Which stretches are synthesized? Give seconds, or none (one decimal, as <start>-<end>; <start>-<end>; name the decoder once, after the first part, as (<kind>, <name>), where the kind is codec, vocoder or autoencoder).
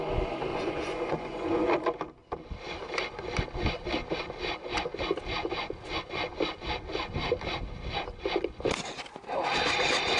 0.5-1.7 (vocoder, Vocos)